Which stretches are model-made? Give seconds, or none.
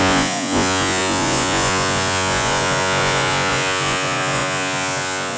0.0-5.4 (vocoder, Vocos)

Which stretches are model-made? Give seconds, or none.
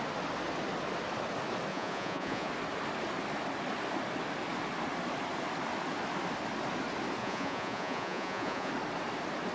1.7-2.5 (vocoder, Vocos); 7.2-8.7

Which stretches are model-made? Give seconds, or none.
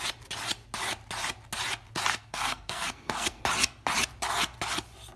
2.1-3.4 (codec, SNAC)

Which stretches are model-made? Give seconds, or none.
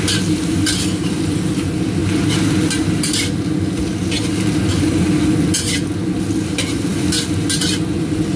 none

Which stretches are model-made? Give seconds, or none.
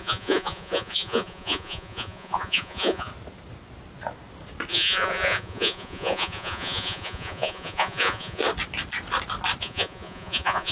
0.0-3.1 (vocoder, Vocos); 4.7-8.4; 9.6-10.7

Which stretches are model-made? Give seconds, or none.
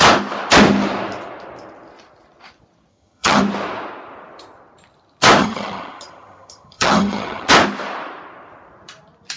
2.9-3.4 (vocoder, HiFi-GAN); 5.4-7.5